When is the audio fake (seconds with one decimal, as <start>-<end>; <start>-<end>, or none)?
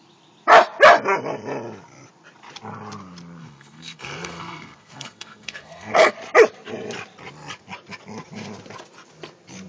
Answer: 3.4-6.1